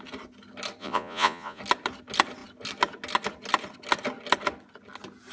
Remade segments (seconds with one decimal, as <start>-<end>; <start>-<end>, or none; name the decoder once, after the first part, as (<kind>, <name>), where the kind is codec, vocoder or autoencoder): 0.8-1.6 (vocoder, Vocos)